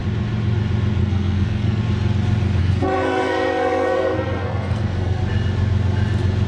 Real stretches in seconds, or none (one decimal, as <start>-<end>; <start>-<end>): 0.0-1.0; 1.8-2.6; 5.2-6.5